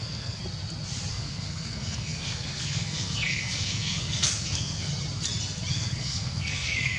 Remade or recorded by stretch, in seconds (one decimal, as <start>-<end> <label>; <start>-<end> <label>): 0.0-0.4 remade; 0.4-1.1 recorded; 1.1-4.9 remade; 4.9-5.7 recorded; 5.7-7.0 remade